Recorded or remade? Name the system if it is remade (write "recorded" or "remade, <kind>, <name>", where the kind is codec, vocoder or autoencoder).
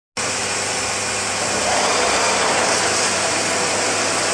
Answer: recorded